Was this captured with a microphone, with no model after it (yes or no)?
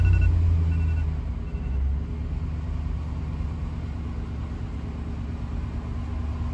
yes